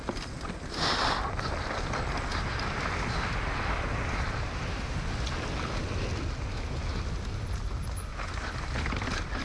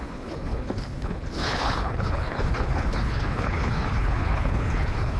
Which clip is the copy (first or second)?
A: second